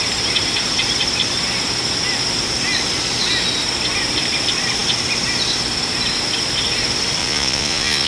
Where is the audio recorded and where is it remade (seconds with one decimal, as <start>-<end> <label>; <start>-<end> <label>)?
0.0-7.2 recorded; 7.2-8.1 remade